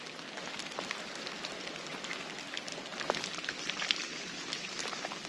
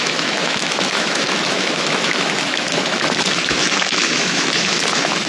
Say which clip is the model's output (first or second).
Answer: second